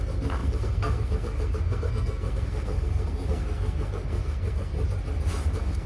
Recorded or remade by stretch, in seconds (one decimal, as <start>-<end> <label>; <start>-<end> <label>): 0.0-4.7 remade; 4.7-5.3 recorded; 5.3-5.9 remade